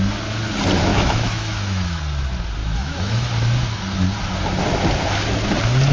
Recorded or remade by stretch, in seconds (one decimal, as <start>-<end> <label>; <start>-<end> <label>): 0.0-0.9 recorded; 0.9-2.0 remade; 2.0-2.6 recorded; 2.6-3.3 remade; 3.3-5.9 recorded